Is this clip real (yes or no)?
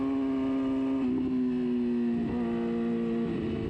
yes